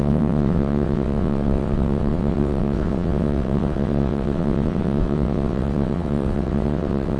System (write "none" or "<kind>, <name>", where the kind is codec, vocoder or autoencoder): vocoder, WaveNeXt